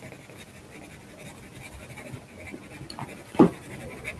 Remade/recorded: recorded